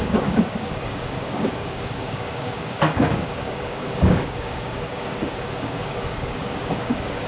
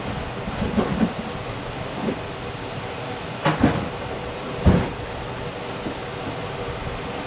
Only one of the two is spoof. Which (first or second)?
first